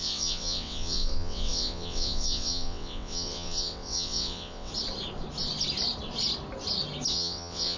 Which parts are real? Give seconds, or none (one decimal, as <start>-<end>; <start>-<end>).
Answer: 4.7-7.1